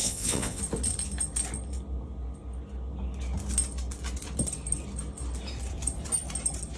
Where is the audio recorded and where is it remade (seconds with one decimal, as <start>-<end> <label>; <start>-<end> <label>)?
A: 0.0-0.6 remade; 0.6-6.8 recorded